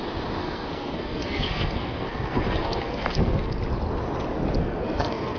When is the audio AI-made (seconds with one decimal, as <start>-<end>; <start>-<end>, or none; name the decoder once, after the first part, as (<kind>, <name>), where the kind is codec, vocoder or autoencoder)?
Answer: 0.4-3.6 (codec, SNAC); 4.6-5.4